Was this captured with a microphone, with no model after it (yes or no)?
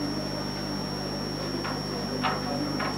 yes